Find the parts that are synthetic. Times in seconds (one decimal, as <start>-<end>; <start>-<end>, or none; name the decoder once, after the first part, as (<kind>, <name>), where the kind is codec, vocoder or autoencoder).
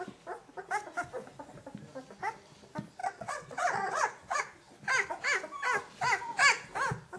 3.0-4.4 (vocoder, WaveNeXt)